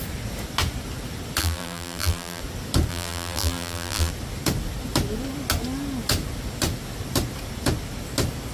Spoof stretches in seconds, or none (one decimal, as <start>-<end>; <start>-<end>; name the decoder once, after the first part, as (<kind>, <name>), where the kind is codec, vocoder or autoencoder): 1.4-2.4 (vocoder, BigVGAN v2); 2.9-4.1